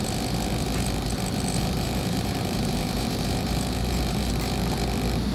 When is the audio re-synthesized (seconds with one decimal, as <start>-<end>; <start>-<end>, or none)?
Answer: 1.6-4.3